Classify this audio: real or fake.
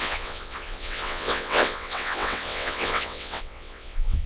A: fake